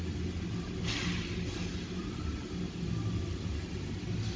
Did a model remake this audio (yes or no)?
no